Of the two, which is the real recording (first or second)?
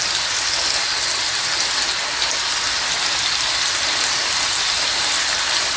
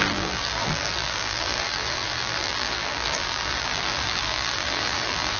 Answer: first